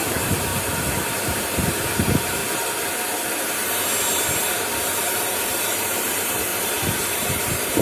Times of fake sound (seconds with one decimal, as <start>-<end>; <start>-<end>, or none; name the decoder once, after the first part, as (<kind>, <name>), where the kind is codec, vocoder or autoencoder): 0.0-2.4 (vocoder, BigVGAN v2); 4.5-6.5; 7.0-7.8